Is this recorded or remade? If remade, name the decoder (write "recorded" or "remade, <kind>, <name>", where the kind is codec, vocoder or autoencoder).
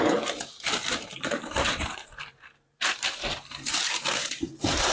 remade, vocoder, BigVGAN v2